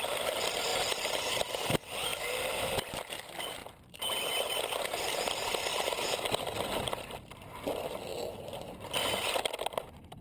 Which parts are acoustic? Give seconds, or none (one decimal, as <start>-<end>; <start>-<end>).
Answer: 0.0-10.2

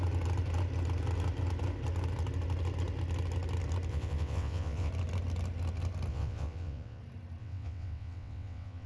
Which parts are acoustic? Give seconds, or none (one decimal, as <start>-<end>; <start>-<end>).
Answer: 0.0-3.9; 4.9-6.1; 7.0-7.4

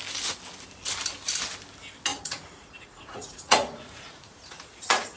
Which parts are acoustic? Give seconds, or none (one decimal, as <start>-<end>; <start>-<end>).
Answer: 0.0-2.1